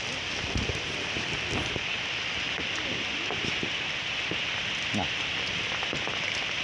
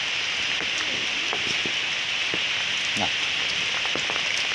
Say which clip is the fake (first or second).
first